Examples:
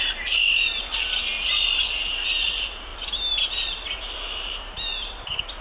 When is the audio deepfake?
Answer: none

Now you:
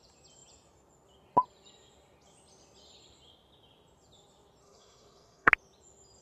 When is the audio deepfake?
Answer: 4.6-5.5 (codec, SNAC)

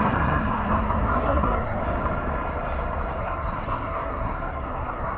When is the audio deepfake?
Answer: 0.0-1.8 (codec, SNAC); 3.2-5.2